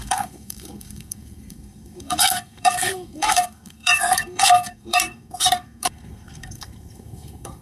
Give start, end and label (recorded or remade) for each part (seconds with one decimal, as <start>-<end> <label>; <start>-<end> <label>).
0.0-7.6 remade